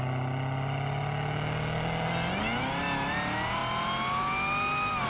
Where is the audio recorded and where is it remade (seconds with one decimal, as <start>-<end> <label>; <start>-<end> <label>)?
0.0-5.1 recorded